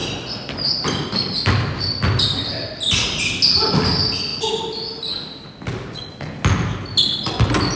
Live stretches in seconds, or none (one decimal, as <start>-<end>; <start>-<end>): 0.0-7.8